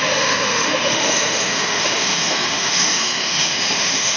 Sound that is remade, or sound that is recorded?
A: remade